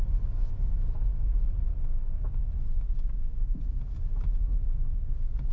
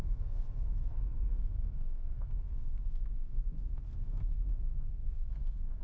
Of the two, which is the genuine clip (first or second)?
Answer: first